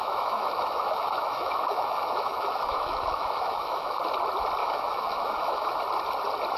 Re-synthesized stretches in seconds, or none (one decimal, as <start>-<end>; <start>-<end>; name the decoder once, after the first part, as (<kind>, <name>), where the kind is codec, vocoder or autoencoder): 0.0-4.0 (autoencoder, DAC-VAE); 4.6-5.8